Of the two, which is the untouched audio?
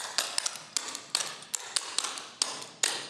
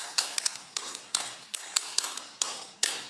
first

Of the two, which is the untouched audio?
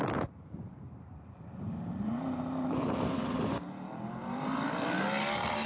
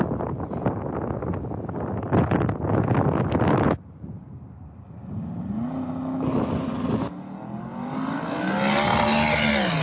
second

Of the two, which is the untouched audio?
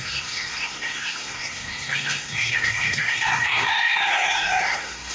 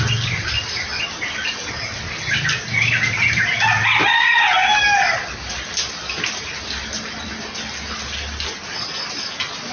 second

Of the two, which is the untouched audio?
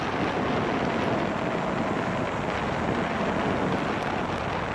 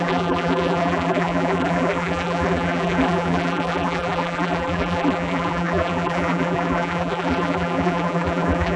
first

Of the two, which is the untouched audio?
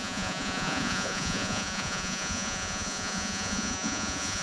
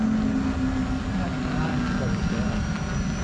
second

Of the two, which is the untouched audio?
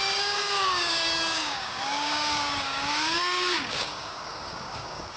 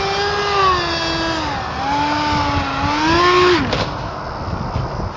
second